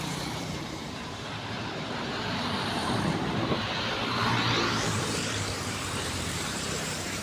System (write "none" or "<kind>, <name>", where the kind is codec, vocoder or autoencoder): vocoder, BigVGAN v2